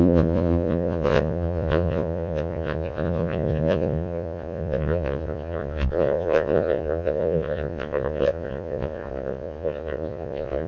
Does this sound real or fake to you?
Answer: fake